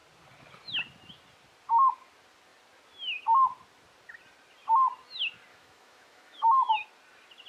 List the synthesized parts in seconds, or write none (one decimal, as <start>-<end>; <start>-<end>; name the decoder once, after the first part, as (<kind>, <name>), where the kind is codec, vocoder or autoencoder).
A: 5.5-6.7 (autoencoder, DAC-VAE)